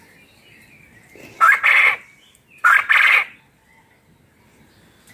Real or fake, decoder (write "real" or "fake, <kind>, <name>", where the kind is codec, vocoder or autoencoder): real